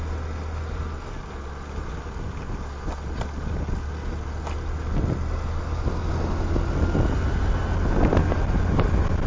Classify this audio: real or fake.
real